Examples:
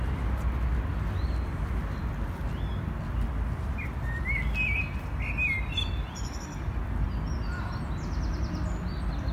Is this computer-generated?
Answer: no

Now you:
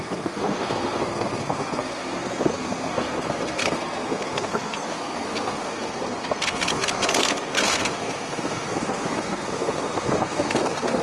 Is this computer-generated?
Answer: yes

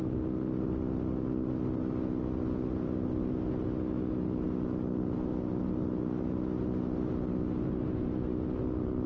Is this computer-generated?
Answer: no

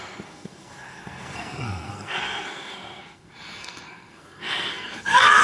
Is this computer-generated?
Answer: yes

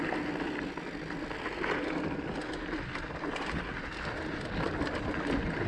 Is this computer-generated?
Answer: no